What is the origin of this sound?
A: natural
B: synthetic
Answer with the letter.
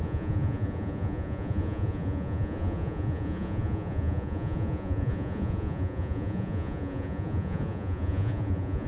B